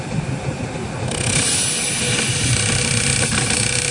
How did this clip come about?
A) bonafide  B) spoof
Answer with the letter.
A